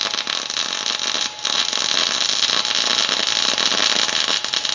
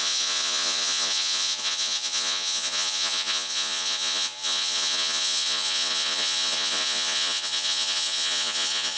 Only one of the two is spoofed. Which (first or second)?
second